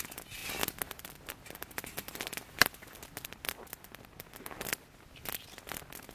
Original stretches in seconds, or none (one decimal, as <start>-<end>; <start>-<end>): 0.0-6.1